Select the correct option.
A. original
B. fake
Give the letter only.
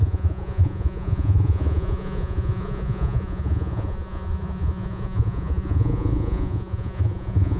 B